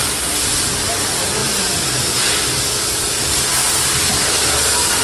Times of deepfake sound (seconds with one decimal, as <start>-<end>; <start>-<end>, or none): 1.4-2.6